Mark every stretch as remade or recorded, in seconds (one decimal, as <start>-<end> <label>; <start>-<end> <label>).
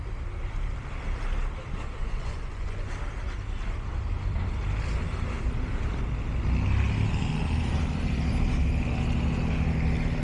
0.0-2.0 recorded; 2.0-2.9 remade; 2.9-10.2 recorded